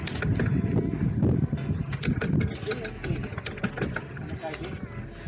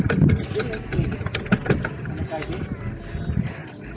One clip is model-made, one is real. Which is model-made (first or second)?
second